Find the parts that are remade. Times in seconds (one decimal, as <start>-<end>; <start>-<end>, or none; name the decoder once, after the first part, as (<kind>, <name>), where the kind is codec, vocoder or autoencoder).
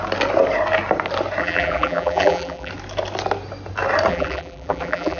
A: 1.4-2.7 (vocoder, BigVGAN v2); 4.1-5.2